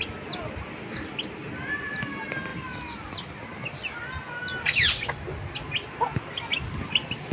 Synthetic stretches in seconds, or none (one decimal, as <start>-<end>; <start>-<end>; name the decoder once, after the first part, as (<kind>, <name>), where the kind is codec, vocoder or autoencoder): none